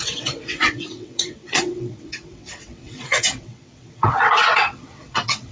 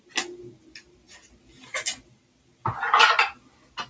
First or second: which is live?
second